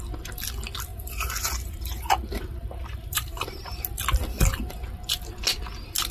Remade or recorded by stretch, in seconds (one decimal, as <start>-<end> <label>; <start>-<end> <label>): 0.0-0.9 recorded; 0.9-3.8 remade; 3.8-6.1 recorded

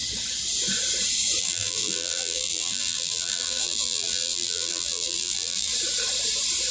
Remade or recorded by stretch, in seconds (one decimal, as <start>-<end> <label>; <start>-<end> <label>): 0.0-1.4 recorded; 1.4-5.7 remade; 5.7-6.7 recorded